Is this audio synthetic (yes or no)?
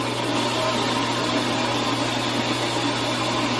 no